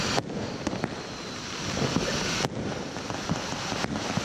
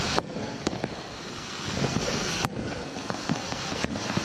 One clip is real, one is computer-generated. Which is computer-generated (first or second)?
second